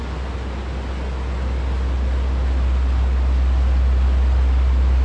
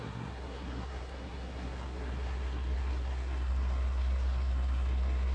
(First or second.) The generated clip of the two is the second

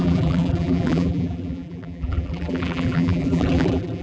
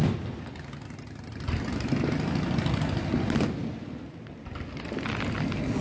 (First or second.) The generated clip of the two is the first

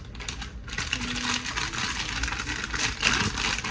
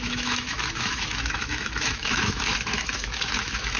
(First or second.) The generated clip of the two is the second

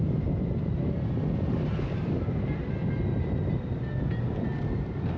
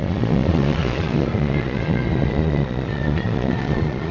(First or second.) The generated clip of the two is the second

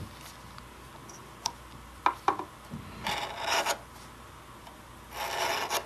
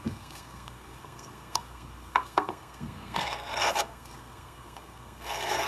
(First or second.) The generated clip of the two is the second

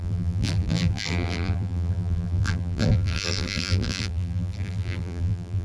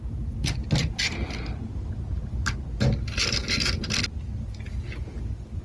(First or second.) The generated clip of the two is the first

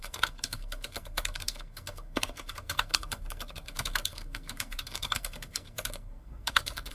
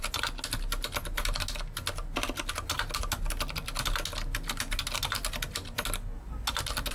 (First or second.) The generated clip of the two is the first